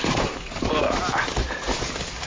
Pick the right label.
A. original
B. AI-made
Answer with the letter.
A